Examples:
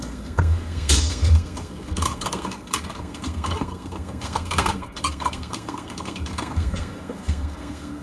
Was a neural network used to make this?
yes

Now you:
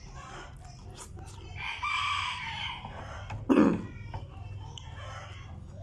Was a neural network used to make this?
no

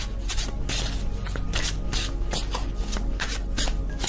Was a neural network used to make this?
no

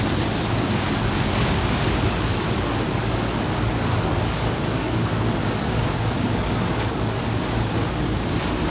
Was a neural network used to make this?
yes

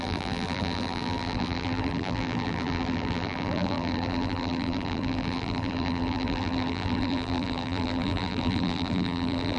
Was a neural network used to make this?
yes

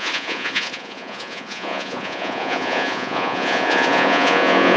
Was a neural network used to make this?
yes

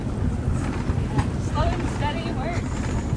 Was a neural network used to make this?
no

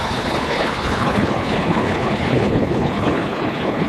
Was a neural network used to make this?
yes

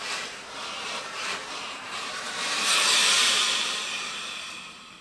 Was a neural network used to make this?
yes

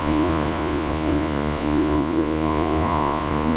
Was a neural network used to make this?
yes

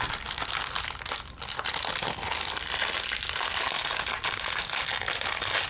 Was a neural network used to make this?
no